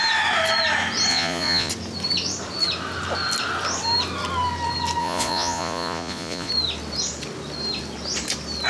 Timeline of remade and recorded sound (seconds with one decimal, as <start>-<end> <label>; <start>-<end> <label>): 0.0-1.1 recorded; 1.1-1.7 remade; 1.7-5.0 recorded; 5.0-6.5 remade; 6.5-8.7 recorded